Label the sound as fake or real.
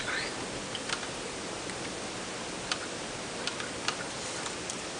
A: real